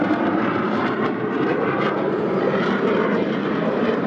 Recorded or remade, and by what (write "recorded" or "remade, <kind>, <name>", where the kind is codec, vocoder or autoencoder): remade, vocoder, BigVGAN v2